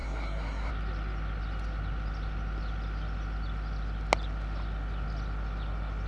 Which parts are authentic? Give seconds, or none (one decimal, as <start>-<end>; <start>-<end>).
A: 0.7-6.1